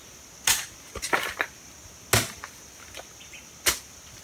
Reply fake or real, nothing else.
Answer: real